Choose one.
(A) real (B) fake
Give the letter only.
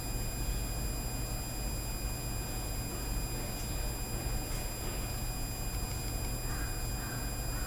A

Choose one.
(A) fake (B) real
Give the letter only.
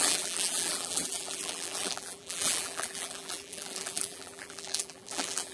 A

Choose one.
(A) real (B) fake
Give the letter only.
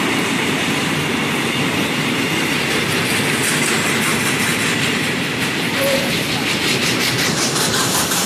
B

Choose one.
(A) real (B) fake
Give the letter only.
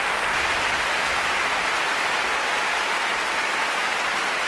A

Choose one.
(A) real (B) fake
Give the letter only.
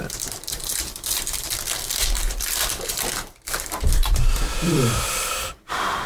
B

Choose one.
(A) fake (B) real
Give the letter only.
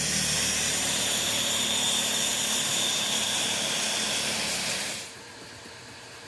A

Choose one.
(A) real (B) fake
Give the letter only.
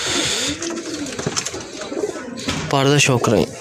A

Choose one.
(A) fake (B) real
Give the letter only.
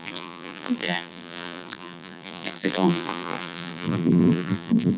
A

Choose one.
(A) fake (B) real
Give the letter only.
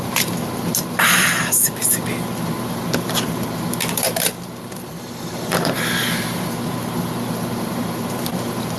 A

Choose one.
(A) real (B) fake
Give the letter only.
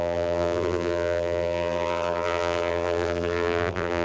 B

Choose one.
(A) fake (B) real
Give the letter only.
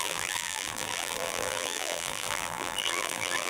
A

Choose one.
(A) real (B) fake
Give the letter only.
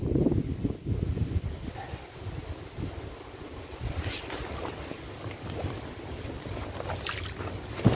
A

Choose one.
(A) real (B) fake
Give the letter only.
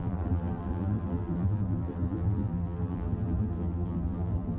B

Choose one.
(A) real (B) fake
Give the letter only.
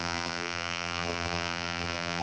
B